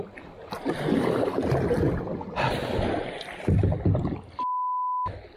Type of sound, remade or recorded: recorded